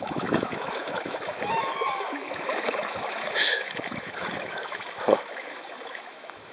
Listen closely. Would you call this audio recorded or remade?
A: remade